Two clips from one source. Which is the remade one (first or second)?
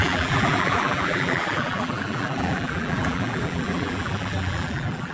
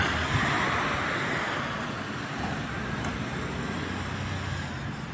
first